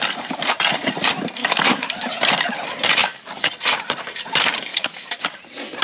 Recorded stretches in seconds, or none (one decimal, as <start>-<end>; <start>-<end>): 0.0-1.4; 2.0-3.0; 3.5-4.7; 5.2-5.8